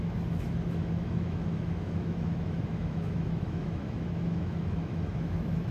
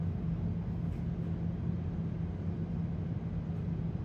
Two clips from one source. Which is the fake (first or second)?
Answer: first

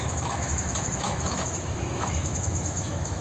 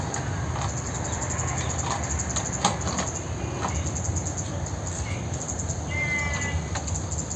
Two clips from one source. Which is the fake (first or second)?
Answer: first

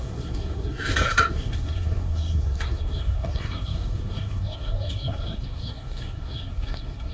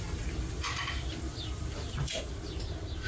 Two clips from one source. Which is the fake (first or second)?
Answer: first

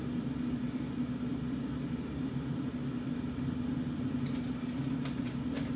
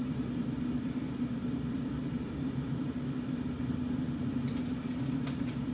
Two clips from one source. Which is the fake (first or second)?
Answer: second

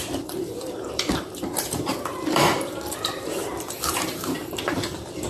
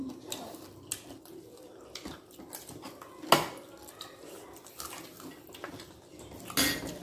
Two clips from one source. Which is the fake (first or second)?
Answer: first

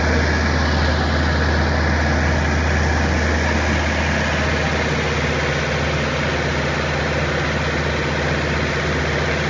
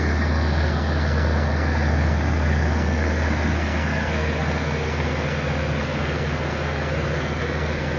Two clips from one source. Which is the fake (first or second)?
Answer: second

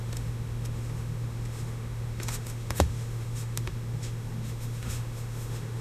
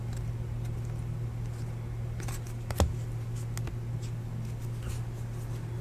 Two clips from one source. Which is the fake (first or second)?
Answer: first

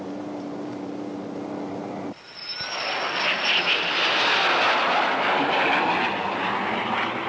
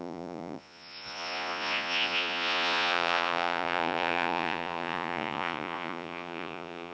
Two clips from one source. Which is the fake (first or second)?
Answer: second